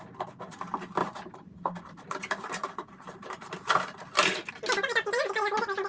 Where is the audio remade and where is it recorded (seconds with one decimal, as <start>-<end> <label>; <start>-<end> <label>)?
0.0-1.0 recorded; 1.0-4.5 remade; 4.5-5.9 recorded